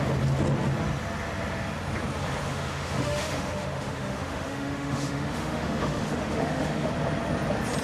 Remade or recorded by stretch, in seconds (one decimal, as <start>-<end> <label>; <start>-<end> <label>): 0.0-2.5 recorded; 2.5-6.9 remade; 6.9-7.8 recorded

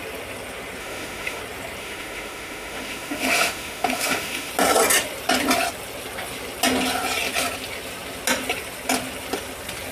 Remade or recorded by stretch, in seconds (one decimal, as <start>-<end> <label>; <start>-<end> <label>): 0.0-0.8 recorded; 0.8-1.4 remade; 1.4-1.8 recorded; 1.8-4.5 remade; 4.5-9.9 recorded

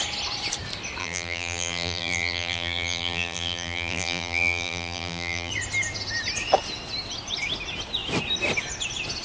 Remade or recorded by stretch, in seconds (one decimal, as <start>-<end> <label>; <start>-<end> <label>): 0.0-1.0 recorded; 1.0-5.5 remade; 5.5-9.2 recorded